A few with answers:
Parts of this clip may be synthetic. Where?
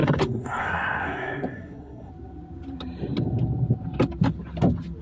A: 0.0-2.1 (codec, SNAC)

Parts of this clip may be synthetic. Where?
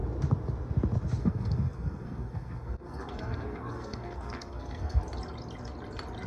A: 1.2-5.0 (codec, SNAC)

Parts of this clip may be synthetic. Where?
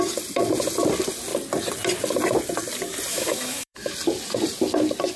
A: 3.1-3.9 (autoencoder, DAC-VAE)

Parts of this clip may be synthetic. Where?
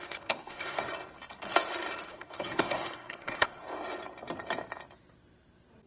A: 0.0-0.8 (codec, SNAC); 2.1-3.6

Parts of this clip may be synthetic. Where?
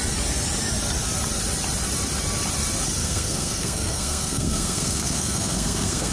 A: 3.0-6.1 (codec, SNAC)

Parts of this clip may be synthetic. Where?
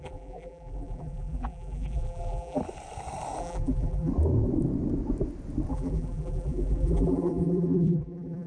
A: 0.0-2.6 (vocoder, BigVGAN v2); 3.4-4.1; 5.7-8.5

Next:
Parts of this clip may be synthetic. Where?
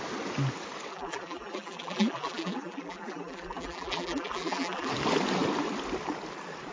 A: 0.9-4.9 (vocoder, BigVGAN v2)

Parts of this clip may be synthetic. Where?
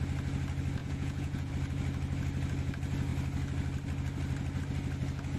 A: 0.8-1.5 (vocoder, Vocos)